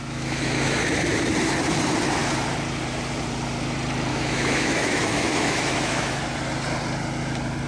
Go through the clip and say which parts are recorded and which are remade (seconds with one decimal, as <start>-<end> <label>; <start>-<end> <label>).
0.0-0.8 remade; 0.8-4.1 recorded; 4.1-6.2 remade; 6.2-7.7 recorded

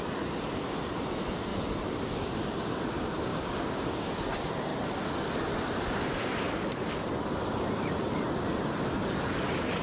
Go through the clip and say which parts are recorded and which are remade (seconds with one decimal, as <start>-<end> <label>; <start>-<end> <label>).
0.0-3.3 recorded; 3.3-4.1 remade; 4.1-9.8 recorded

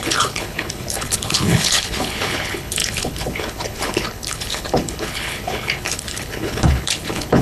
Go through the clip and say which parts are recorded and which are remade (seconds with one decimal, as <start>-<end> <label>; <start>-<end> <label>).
0.0-7.4 remade